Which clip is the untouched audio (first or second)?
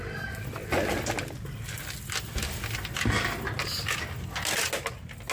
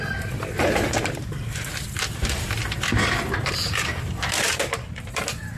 first